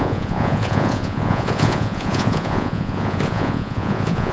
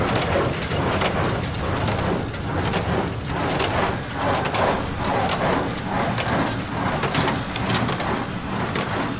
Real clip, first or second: second